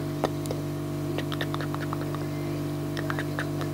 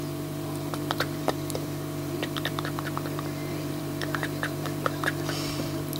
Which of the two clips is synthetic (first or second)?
second